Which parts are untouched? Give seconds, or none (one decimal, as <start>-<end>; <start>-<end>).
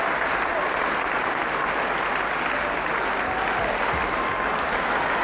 0.0-5.2